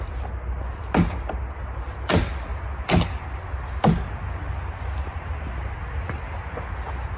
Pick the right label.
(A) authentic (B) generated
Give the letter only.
A